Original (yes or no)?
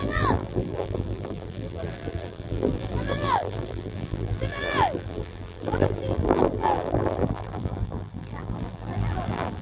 no